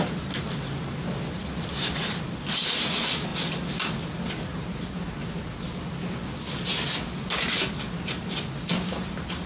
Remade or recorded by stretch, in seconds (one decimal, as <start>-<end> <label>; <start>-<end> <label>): 0.0-9.5 recorded